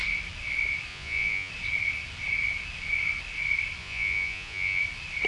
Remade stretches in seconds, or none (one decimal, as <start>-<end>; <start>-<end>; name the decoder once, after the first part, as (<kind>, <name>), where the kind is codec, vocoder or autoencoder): 0.9-1.5 (vocoder, Vocos); 3.8-4.8